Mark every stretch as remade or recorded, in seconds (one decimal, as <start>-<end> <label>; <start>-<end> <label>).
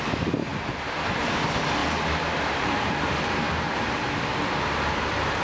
0.0-1.8 recorded; 1.8-4.0 remade; 4.0-5.4 recorded